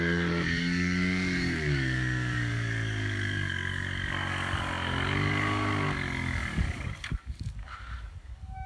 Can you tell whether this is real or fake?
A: fake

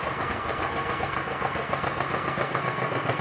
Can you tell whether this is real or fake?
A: fake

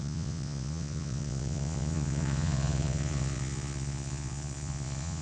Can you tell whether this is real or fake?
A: fake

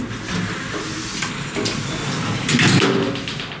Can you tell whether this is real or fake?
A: real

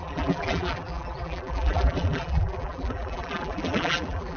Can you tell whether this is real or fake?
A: fake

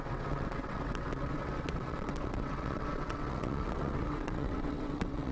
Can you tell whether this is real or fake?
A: fake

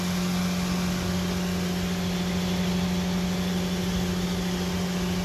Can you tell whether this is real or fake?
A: real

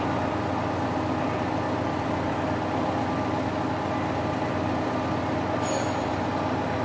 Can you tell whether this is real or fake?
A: real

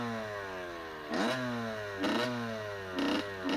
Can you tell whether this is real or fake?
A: real